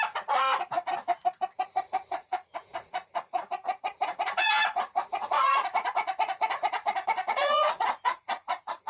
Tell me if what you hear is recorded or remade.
remade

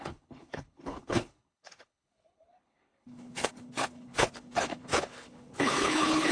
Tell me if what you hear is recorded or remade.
remade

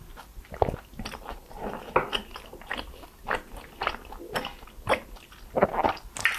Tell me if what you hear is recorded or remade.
recorded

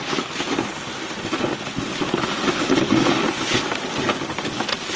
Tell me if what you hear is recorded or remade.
remade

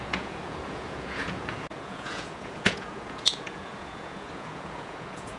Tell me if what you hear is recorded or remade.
remade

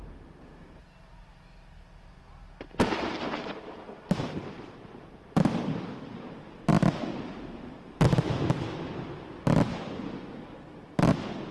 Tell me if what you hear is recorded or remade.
recorded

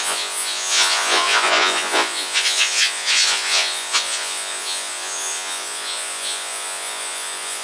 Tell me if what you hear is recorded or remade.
remade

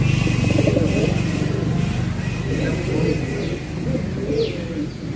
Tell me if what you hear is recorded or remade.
recorded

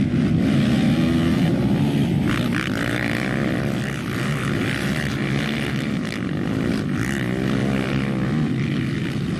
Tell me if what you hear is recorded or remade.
recorded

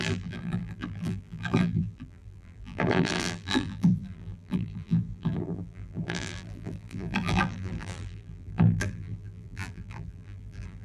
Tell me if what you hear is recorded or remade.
remade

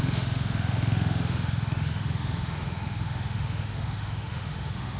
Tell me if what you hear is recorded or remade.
remade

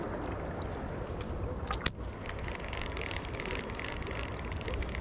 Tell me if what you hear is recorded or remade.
recorded